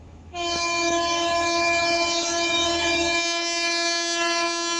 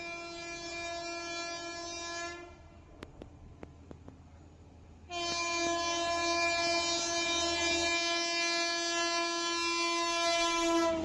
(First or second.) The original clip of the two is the second